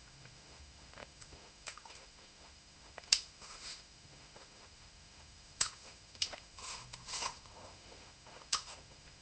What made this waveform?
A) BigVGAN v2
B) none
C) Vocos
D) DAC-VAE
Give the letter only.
D